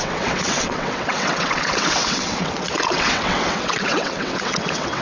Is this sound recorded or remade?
remade